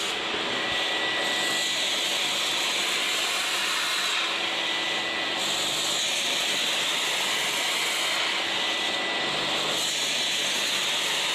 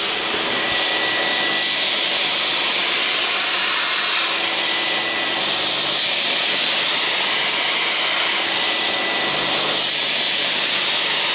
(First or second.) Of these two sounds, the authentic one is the first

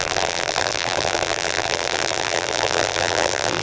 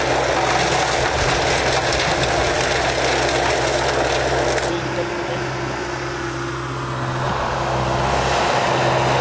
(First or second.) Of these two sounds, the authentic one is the second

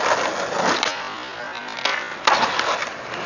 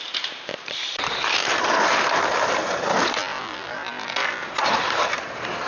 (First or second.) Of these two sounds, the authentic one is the first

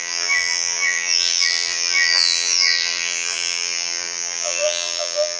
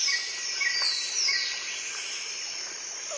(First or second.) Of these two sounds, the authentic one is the second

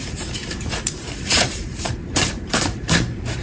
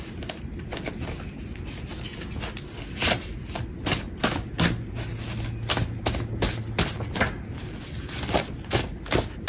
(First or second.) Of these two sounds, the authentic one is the second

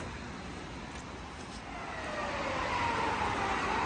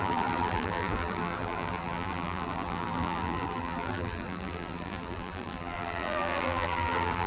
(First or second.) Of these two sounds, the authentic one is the first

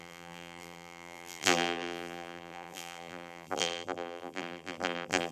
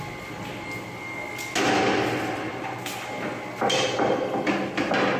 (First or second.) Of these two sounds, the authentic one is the second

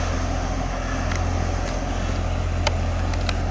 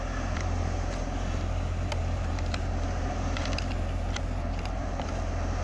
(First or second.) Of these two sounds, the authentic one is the first